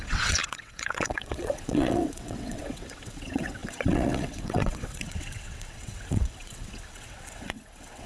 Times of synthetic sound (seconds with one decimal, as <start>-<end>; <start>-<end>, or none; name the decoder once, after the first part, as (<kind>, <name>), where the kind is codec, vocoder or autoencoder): 0.0-8.1 (vocoder, WaveNeXt)